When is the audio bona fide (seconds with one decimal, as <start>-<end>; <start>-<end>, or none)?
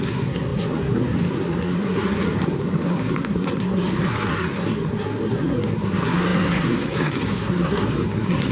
none